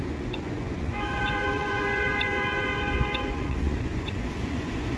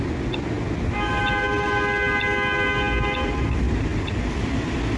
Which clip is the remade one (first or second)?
first